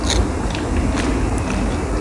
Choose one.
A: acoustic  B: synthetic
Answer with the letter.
A